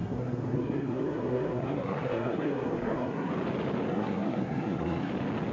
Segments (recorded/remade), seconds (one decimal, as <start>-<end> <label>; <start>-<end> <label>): 0.0-3.3 remade; 3.3-3.9 recorded; 3.9-5.1 remade; 5.1-5.5 recorded